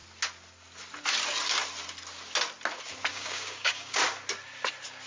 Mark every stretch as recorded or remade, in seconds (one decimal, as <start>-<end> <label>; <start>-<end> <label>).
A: 0.0-3.1 recorded; 3.1-4.0 remade; 4.0-5.1 recorded

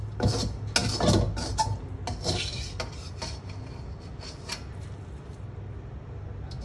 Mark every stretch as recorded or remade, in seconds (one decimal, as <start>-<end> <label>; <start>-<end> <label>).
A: 0.0-6.6 recorded

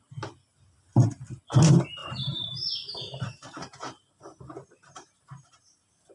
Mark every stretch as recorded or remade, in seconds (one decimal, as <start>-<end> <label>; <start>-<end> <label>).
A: 0.0-2.0 recorded; 2.0-6.1 remade

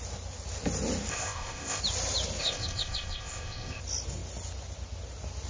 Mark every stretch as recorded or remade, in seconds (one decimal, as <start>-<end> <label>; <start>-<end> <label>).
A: 0.0-1.1 recorded; 1.1-1.8 remade; 1.8-2.4 recorded; 2.4-3.8 remade; 3.8-5.5 recorded

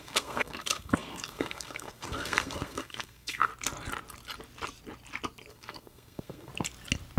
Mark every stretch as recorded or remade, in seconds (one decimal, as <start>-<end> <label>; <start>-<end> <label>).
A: 0.0-3.5 remade; 3.5-5.5 recorded; 5.5-6.5 remade; 6.5-7.2 recorded

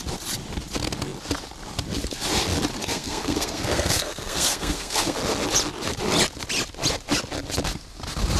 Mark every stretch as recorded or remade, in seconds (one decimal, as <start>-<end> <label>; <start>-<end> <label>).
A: 0.0-2.8 recorded; 2.8-5.2 remade; 5.2-8.4 recorded

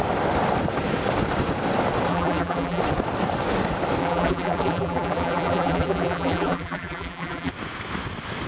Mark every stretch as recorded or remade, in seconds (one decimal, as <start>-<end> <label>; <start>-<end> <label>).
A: 0.0-2.1 recorded; 2.1-2.8 remade; 2.8-4.0 recorded; 4.0-7.5 remade; 7.5-8.5 recorded

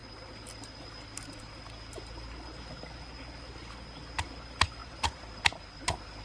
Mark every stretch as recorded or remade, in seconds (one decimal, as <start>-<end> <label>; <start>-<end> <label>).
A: 0.0-6.2 recorded